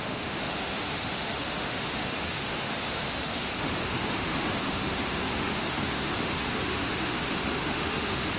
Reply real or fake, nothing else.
fake